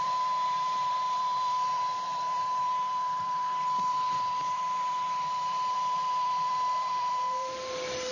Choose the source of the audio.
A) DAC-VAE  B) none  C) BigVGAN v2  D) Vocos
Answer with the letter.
C